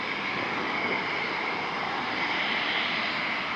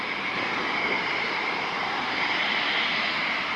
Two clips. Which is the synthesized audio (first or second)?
second